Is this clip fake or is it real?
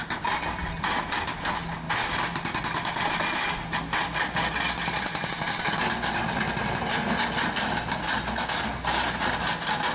real